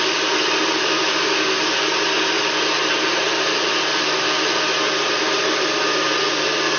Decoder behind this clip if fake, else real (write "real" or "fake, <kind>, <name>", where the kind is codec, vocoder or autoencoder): real